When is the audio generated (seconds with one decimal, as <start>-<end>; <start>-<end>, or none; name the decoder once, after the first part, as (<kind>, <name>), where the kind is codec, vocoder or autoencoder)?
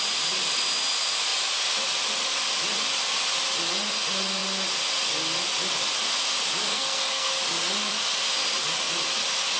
6.7-7.3 (codec, SNAC)